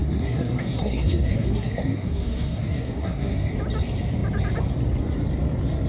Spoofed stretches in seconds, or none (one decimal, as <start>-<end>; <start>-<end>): 0.0-3.5